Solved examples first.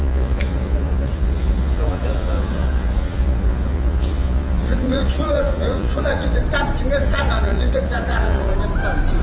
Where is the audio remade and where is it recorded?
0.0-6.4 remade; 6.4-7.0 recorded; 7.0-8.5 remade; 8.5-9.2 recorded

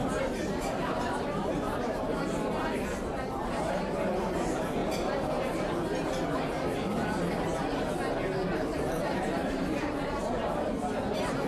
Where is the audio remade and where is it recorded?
0.0-0.7 recorded; 0.7-2.6 remade; 2.6-3.3 recorded; 3.3-4.8 remade; 4.8-9.0 recorded; 9.0-11.5 remade

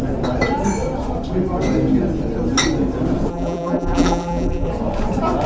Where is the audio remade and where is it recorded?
0.0-3.3 recorded; 3.3-4.7 remade; 4.7-5.5 recorded

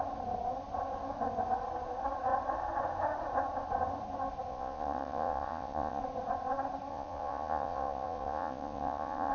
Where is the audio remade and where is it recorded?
0.0-4.5 recorded; 4.5-6.0 remade; 6.0-6.9 recorded; 6.9-9.3 remade

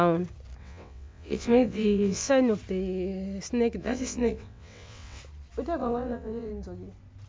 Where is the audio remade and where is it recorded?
0.0-0.6 recorded; 0.6-2.3 remade; 2.3-3.8 recorded; 3.8-5.2 remade; 5.2-5.8 recorded; 5.8-6.5 remade; 6.5-7.3 recorded

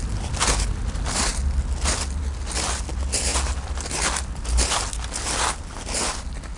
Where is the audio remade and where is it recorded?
0.0-6.6 recorded

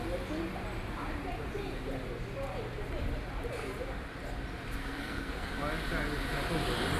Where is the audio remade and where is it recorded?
0.0-4.8 recorded; 4.8-5.5 remade; 5.5-7.0 recorded